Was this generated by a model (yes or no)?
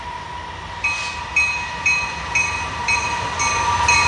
no